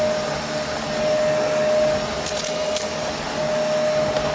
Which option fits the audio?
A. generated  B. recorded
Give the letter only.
B